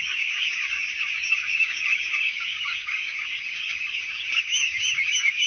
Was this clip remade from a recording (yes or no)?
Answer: yes